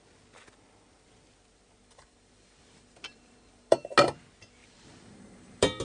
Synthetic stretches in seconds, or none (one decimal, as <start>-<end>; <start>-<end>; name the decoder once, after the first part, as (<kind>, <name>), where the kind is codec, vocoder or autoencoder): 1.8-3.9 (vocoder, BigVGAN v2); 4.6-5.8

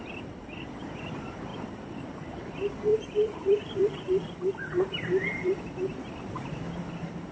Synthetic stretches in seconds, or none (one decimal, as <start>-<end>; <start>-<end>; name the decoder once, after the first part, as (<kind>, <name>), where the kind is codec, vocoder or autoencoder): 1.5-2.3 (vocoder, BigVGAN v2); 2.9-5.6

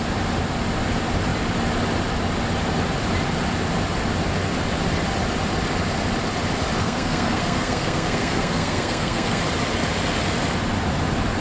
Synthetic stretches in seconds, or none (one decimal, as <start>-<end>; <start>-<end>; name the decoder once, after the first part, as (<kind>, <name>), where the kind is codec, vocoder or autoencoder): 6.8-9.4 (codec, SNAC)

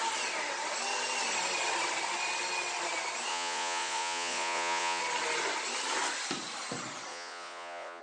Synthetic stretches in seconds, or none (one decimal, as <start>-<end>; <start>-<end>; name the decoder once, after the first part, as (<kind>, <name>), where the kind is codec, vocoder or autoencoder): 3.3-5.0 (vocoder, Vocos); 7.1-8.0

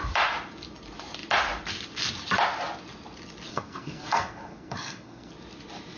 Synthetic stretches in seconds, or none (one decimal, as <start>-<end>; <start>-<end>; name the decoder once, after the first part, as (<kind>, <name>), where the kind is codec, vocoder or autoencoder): 3.5-5.3 (codec, SNAC)